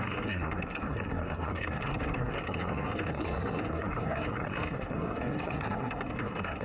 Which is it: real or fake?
fake